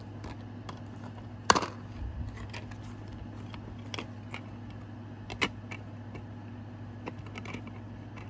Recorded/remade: recorded